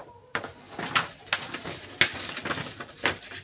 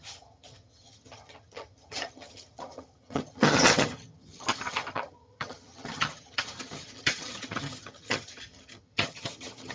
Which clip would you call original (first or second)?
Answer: first